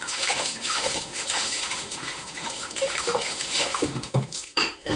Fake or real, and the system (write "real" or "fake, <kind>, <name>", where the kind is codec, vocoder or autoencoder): fake, autoencoder, DAC-VAE